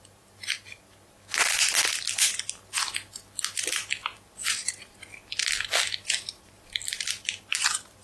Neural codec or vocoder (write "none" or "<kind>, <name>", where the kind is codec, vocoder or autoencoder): none